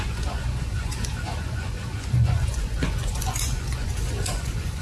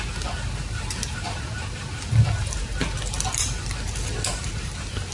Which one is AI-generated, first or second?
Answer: first